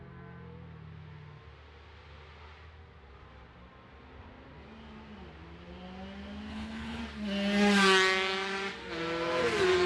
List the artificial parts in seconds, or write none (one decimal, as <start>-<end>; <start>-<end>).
6.5-7.0